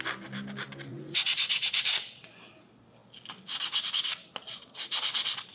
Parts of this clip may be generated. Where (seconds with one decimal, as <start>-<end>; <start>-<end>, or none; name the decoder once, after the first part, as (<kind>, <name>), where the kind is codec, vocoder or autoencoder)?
0.9-1.8 (vocoder, Vocos)